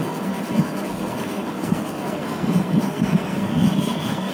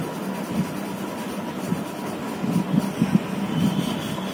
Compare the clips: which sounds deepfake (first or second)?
first